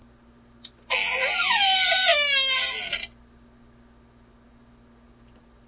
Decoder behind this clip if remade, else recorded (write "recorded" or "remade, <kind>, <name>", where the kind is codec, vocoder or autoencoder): recorded